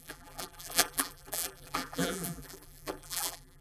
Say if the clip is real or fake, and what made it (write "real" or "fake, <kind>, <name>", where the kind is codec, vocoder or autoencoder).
fake, vocoder, BigVGAN v2